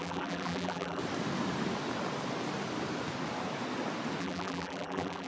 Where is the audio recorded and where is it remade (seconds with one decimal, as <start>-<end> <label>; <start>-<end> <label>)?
0.0-1.0 remade; 1.0-4.2 recorded; 4.2-5.3 remade

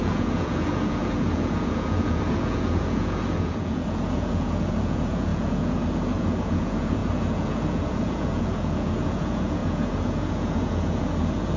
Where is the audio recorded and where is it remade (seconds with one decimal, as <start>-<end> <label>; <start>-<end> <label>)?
0.0-11.6 remade

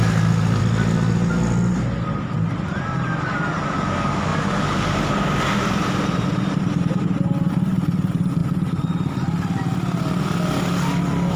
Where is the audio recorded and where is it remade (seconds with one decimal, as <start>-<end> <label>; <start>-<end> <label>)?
0.0-0.6 remade; 0.6-11.4 recorded

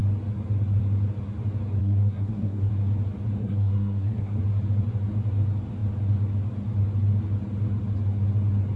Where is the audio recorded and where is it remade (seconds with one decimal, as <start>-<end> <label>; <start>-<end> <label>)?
0.0-1.8 recorded; 1.8-2.7 remade; 2.7-3.4 recorded; 3.4-4.4 remade; 4.4-8.8 recorded